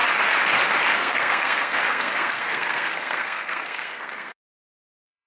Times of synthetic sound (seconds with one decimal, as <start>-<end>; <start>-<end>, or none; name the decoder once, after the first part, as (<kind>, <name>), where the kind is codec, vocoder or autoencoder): 0.9-5.3 (codec, SNAC)